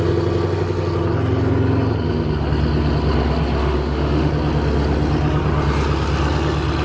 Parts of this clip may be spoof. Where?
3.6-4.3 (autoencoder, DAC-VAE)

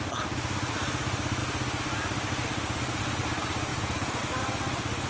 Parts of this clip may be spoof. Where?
3.7-4.2 (vocoder, Vocos)

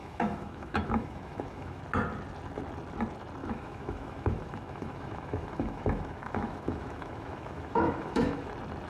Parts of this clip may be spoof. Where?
0.0-1.8 (autoencoder, DAC-VAE); 3.4-8.5